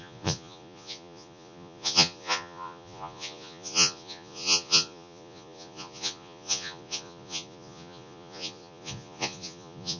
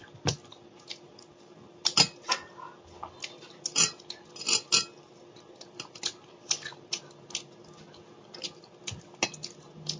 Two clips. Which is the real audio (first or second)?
second